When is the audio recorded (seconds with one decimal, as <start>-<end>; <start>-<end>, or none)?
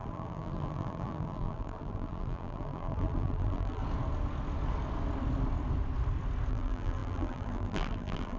3.8-6.5